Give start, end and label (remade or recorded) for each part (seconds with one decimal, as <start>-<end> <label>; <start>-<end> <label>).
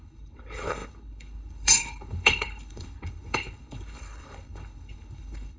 0.0-5.6 remade